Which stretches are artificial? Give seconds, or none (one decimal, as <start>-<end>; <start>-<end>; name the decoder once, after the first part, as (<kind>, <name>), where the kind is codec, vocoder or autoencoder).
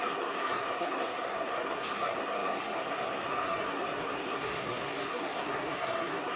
0.0-6.4 (codec, SNAC)